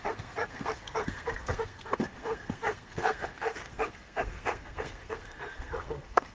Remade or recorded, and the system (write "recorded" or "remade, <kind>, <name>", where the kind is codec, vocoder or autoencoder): remade, codec, SNAC